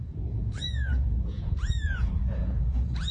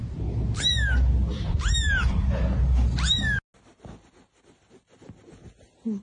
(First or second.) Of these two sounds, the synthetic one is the first